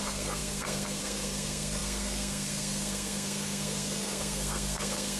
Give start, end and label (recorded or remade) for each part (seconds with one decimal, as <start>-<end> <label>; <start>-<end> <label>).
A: 0.0-5.2 remade